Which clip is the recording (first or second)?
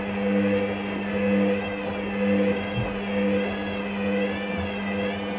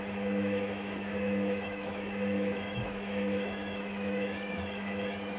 first